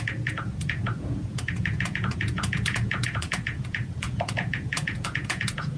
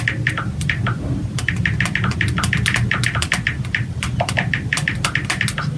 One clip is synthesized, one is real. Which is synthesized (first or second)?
first